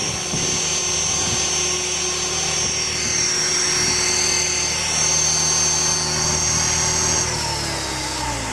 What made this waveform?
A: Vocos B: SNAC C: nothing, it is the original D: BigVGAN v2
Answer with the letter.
C